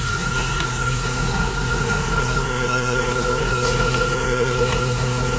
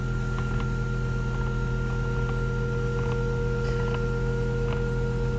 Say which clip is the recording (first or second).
second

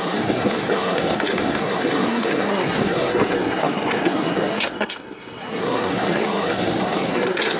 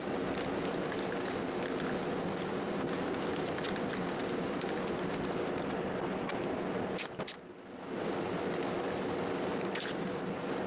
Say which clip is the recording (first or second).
second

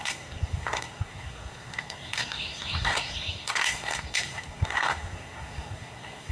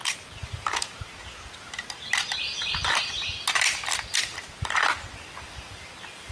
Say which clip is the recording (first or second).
second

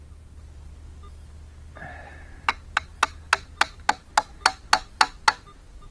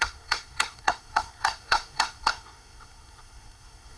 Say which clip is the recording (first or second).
first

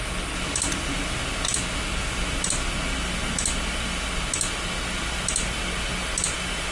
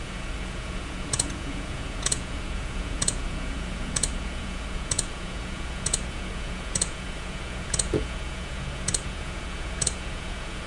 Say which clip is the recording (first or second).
first